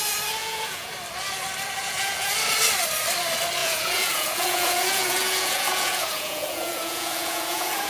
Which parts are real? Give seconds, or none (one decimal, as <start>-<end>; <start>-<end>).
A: 0.0-0.4; 0.9-1.8; 2.3-3.6